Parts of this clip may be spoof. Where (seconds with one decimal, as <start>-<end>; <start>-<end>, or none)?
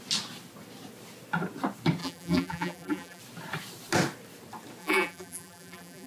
2.0-3.2; 4.8-6.1